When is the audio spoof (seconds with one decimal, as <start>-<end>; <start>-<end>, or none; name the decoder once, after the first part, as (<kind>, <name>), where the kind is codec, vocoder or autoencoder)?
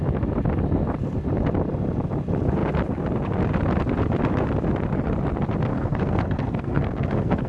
5.7-7.5 (codec, SNAC)